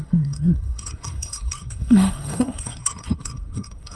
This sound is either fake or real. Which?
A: fake